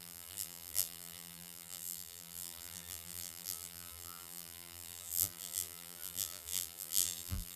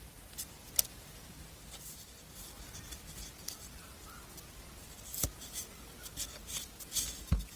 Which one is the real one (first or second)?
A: second